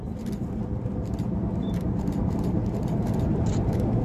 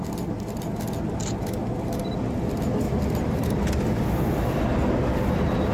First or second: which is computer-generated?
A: first